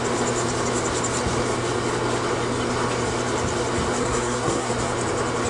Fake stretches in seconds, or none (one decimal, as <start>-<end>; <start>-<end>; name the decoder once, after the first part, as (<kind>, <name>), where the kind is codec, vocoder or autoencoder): 4.0-4.7 (codec, SNAC)